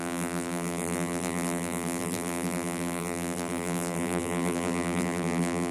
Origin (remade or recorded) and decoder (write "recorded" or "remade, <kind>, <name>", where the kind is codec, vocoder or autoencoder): remade, vocoder, BigVGAN v2